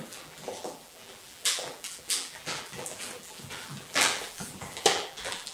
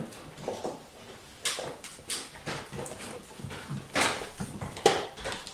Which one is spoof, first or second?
first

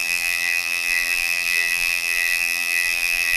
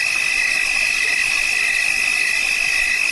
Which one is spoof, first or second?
first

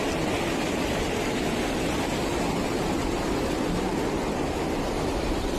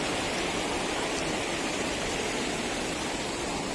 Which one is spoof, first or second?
second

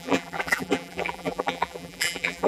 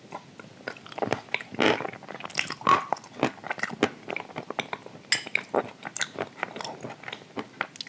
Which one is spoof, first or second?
first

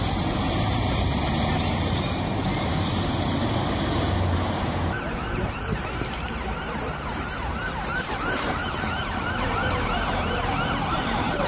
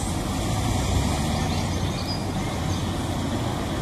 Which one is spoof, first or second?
first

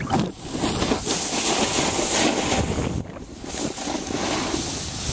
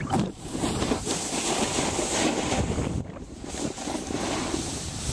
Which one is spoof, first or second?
second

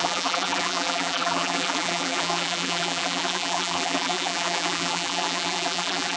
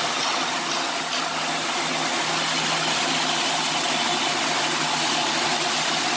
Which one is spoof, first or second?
first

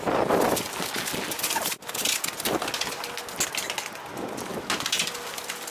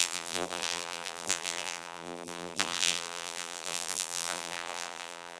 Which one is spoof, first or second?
second